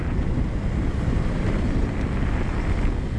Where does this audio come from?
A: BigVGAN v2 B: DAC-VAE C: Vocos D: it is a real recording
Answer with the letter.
D